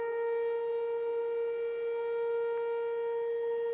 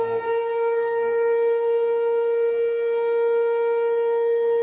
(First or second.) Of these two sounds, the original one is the first